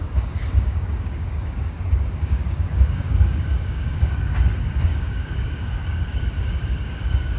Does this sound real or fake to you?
fake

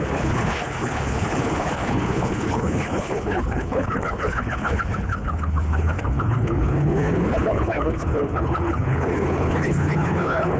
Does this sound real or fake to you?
fake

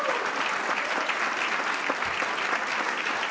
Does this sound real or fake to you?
real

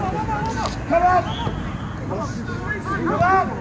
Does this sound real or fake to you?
real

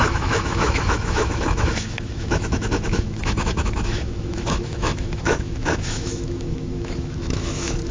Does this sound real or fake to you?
fake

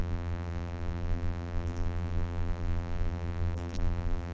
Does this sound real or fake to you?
fake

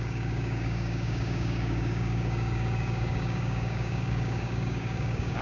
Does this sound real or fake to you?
fake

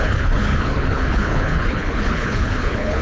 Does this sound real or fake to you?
fake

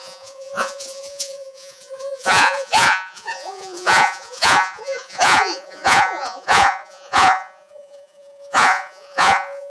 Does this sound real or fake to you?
fake